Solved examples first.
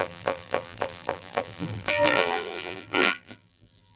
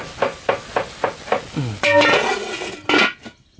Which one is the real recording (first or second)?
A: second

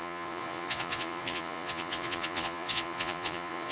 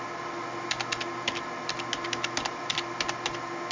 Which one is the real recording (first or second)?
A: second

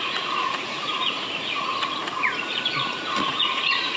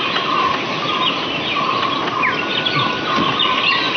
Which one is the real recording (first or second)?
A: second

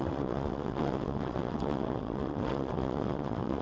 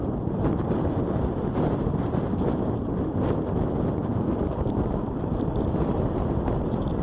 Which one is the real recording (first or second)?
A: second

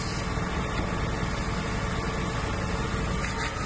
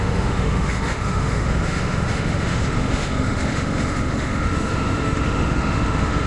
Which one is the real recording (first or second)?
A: first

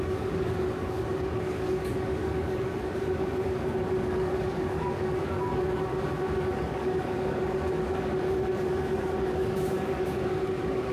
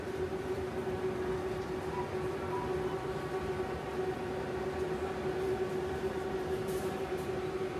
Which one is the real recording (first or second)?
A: second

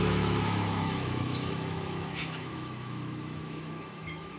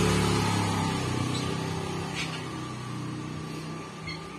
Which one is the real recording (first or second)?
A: second